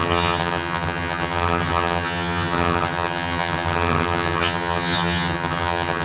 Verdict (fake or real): fake